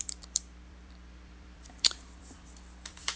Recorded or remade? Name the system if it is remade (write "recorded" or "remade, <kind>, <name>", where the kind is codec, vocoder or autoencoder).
remade, vocoder, BigVGAN v2